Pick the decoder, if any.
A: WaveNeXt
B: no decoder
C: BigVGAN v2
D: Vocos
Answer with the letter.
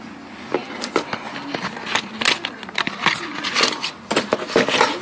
B